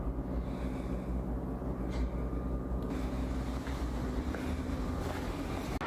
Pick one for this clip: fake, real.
real